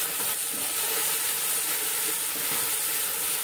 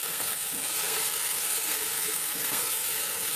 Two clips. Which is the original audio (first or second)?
first